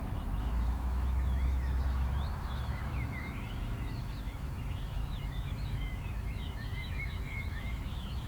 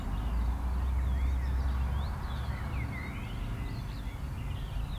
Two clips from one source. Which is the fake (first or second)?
first